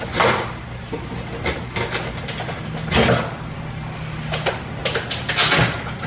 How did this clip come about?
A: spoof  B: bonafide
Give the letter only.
B